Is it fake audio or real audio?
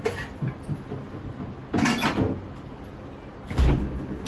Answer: real